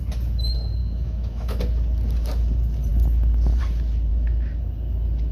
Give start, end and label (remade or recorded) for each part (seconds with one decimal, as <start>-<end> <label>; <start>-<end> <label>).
0.0-0.8 recorded; 0.8-1.6 remade; 1.6-4.1 recorded; 4.1-4.6 remade; 4.6-5.3 recorded